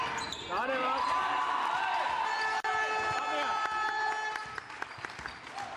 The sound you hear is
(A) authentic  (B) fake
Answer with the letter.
A